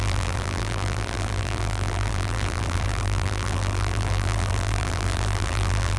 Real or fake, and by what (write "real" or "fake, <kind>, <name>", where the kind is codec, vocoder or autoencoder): fake, vocoder, BigVGAN v2